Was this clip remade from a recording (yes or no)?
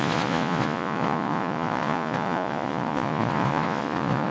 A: yes